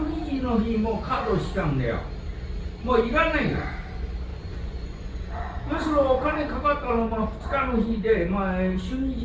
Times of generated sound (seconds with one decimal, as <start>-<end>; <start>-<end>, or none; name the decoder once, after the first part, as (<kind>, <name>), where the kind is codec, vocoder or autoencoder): 4.3-5.6 (vocoder, Vocos)